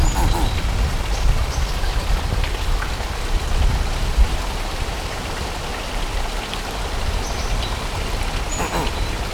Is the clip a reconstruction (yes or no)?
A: no